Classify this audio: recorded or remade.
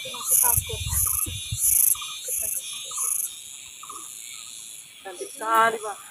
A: recorded